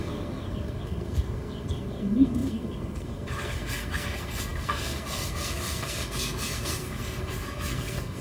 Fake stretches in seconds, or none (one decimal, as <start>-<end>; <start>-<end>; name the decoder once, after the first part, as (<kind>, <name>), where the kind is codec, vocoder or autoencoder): 0.0-8.2 (codec, SNAC)